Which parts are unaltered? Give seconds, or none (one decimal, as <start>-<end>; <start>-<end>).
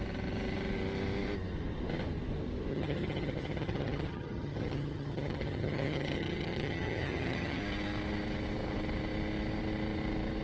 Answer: 0.0-2.7; 7.6-10.4